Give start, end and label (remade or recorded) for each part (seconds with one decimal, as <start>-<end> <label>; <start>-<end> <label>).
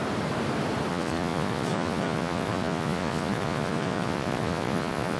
0.0-0.9 recorded; 0.9-5.2 remade